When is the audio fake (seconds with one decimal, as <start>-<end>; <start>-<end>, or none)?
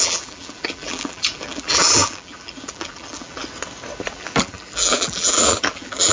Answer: 0.0-3.4; 4.1-6.1